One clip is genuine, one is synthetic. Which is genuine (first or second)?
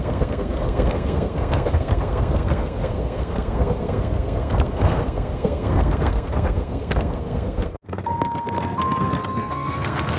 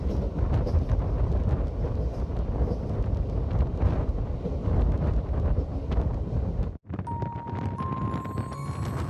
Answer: second